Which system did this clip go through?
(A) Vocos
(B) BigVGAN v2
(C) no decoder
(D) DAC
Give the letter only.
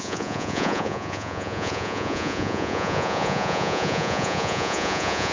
A